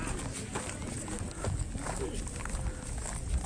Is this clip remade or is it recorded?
recorded